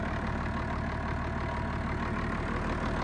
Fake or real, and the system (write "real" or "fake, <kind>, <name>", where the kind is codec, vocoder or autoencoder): real